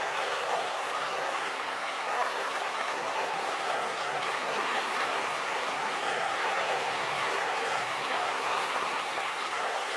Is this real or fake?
fake